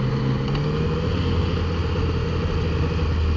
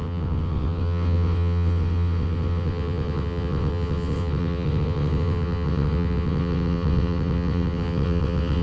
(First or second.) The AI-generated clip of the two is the second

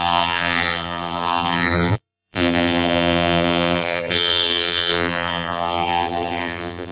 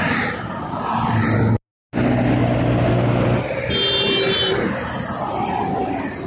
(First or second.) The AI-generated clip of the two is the first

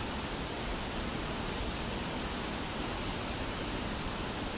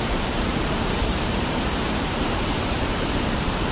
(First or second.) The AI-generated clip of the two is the second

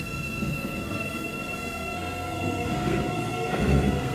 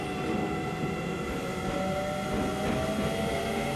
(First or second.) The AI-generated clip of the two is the first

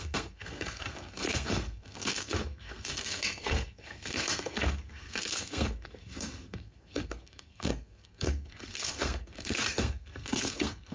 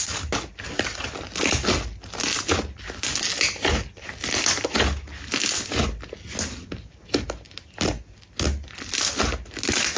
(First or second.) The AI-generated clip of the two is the first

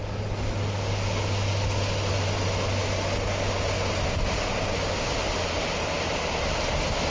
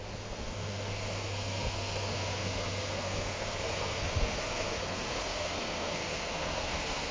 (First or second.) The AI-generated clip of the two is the second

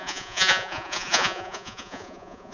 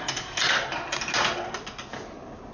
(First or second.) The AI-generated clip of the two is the first